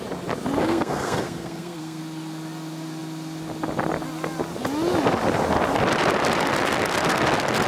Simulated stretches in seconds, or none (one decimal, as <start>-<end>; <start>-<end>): 0.6-2.0